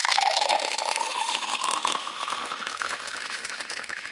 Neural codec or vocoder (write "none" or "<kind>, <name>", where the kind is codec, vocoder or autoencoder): autoencoder, DAC-VAE